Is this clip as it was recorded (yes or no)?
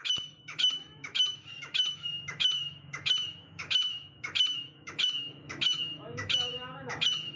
no